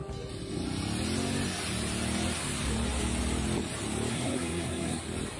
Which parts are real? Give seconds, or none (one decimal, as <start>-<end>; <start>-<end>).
0.0-4.1; 5.0-5.4